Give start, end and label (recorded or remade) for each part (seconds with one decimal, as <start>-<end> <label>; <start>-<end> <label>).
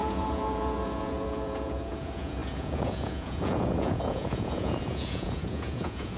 0.0-6.2 remade